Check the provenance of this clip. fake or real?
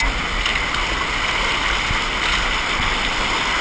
real